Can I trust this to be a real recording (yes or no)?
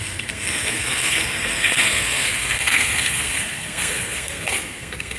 no